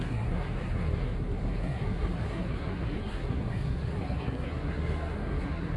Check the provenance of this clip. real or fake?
fake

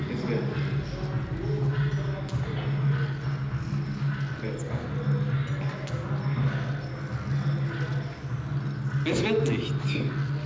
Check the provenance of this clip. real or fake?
real